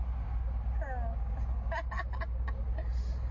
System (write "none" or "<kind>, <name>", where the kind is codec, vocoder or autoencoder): none